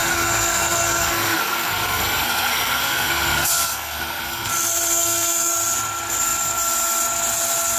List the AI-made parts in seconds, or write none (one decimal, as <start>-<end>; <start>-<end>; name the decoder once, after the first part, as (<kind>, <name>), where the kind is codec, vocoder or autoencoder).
0.0-4.5 (codec, SNAC); 4.9-5.5